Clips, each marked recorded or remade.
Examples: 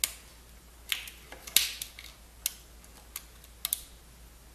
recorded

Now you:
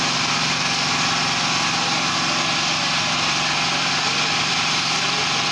recorded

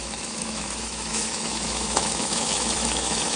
remade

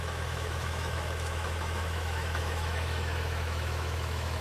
remade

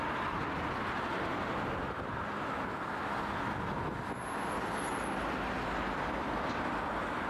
recorded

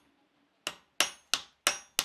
recorded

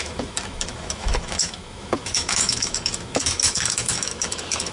remade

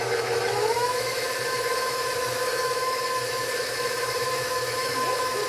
remade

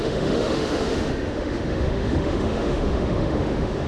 remade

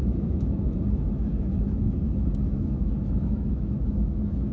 remade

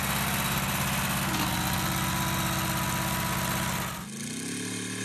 recorded